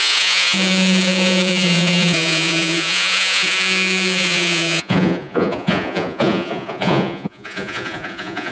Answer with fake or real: fake